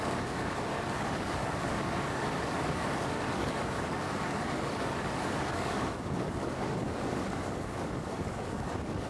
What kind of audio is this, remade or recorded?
remade